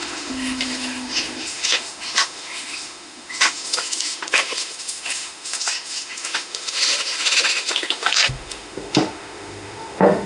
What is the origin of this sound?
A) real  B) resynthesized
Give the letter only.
B